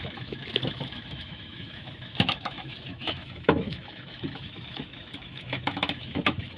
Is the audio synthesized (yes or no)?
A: yes